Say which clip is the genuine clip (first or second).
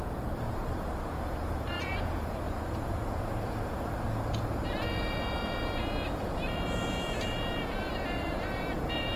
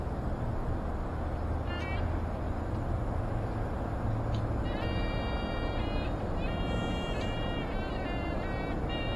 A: second